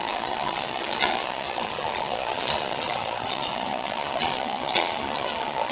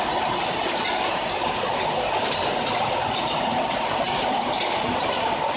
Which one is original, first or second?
second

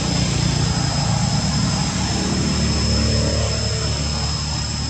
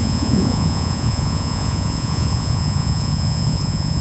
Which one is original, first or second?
first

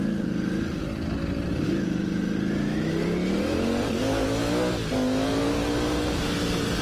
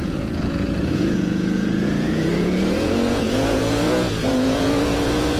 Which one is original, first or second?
first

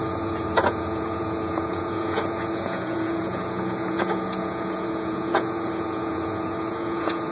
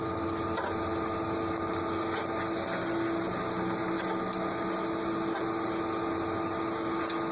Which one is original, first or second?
second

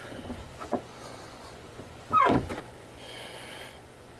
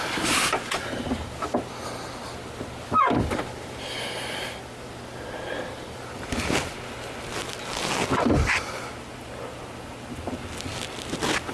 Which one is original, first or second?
second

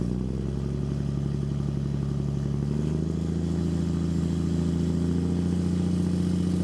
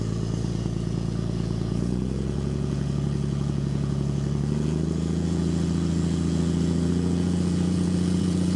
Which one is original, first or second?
first